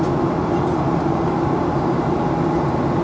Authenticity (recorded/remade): recorded